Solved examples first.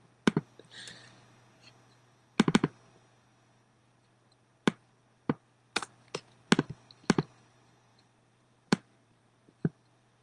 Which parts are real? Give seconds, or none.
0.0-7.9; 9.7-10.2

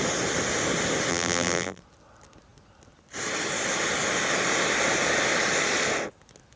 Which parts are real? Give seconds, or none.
0.0-1.1; 1.8-6.6